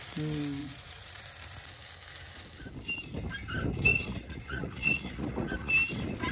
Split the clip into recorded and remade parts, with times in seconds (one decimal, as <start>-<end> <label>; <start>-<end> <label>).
0.0-0.6 recorded; 0.6-1.2 remade; 1.2-3.9 recorded; 3.9-5.7 remade; 5.7-6.3 recorded

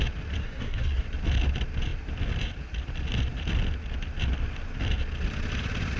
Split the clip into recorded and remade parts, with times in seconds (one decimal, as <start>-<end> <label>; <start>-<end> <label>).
0.0-0.4 recorded; 0.4-1.0 remade; 1.0-6.0 recorded

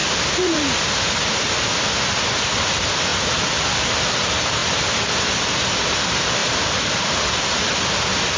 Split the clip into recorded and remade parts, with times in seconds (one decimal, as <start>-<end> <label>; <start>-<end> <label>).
0.0-0.9 remade; 0.9-6.4 recorded; 6.4-7.3 remade; 7.3-8.4 recorded

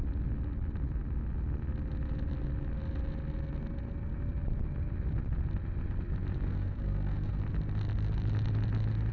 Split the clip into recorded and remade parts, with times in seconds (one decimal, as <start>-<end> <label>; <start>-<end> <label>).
0.0-6.5 recorded; 6.5-7.4 remade; 7.4-9.1 recorded

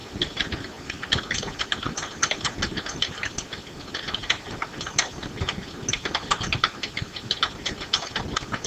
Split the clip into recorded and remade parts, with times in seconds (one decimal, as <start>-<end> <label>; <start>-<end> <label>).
0.0-8.7 recorded